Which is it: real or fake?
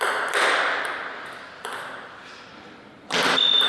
real